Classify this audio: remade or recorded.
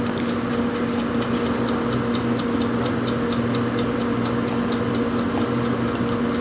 recorded